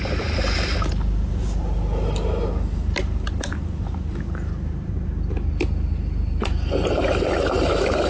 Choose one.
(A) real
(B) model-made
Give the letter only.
A